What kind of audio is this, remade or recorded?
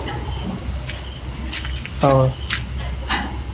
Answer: recorded